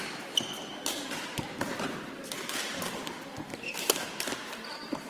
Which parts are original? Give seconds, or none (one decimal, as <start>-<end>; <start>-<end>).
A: 0.7-2.7